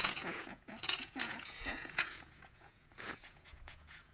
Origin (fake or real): fake